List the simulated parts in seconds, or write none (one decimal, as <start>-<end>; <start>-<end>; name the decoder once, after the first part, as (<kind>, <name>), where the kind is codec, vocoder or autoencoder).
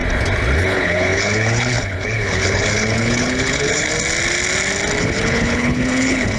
0.6-3.9 (codec, HILCodec); 5.0-6.4